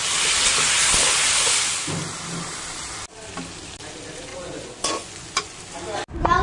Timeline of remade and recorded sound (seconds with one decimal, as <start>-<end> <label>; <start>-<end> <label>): 0.0-4.3 recorded; 4.3-5.6 remade; 5.6-6.4 recorded

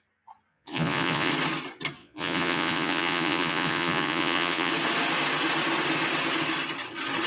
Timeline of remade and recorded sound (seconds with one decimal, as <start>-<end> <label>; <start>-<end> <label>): 0.0-0.5 recorded; 0.5-1.3 remade; 1.3-2.0 recorded; 2.0-4.7 remade; 4.7-7.3 recorded

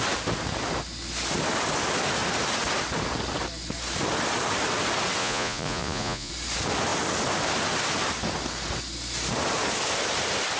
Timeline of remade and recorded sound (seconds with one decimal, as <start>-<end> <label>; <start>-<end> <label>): 0.0-5.2 recorded; 5.2-6.3 remade; 6.3-10.6 recorded

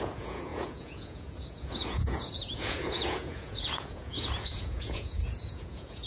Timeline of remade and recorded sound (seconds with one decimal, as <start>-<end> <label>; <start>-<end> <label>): 0.0-6.1 remade

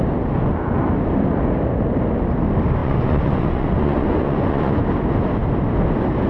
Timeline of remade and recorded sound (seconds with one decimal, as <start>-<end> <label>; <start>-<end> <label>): 0.0-2.8 recorded; 2.8-4.8 remade; 4.8-6.3 recorded

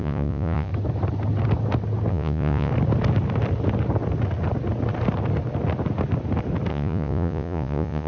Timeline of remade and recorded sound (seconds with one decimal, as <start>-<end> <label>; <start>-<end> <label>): 0.0-0.7 remade; 0.7-2.1 recorded; 2.1-2.7 remade; 2.7-6.7 recorded; 6.7-8.1 remade

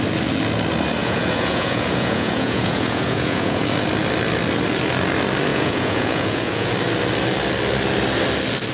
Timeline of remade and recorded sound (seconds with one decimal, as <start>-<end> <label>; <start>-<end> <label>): 0.0-1.0 recorded; 1.0-3.6 remade; 3.6-5.5 recorded; 5.5-6.7 remade; 6.7-8.7 recorded